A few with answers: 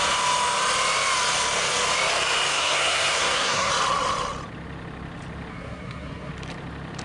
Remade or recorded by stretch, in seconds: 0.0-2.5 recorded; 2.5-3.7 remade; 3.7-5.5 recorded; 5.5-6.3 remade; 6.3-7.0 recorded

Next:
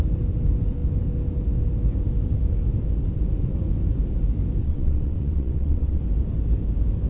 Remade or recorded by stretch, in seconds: 0.0-4.6 recorded; 4.6-6.0 remade; 6.0-7.1 recorded

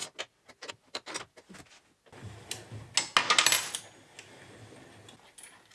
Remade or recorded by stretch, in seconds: 0.0-5.7 recorded